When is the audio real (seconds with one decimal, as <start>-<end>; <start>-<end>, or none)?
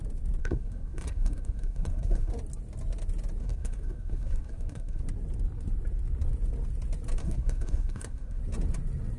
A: 0.0-0.4; 2.3-3.4; 5.0-7.2; 8.4-9.2